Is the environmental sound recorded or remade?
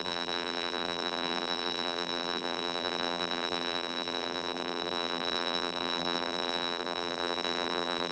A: remade